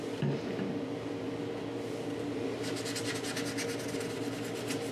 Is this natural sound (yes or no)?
yes